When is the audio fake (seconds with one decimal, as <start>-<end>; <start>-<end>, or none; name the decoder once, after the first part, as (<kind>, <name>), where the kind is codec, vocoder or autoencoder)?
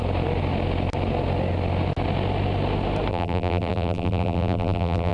3.1-5.1 (vocoder, BigVGAN v2)